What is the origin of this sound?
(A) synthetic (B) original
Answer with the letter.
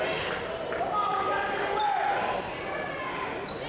B